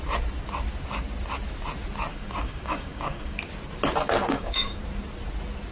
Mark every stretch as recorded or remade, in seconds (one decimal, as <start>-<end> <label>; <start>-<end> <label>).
0.0-2.1 recorded; 2.1-3.4 remade; 3.4-4.2 recorded; 4.2-4.8 remade; 4.8-5.7 recorded